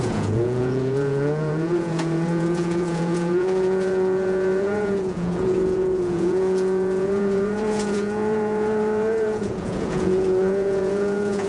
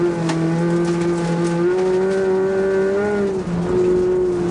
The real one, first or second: second